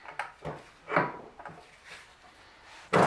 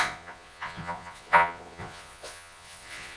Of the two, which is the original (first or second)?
first